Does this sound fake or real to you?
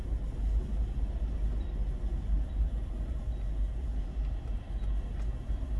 real